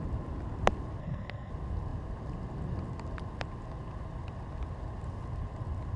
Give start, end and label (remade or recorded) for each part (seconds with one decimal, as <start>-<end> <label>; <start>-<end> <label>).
0.0-1.0 recorded; 1.0-1.5 remade; 1.5-6.0 recorded